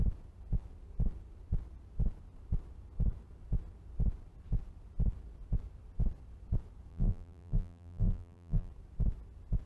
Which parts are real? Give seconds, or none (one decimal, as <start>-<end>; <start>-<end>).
0.0-6.9; 8.7-9.7